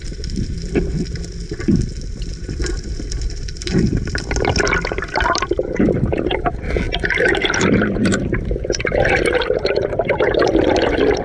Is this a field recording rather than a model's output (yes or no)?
no